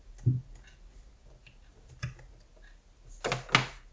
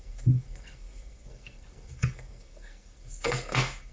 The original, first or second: first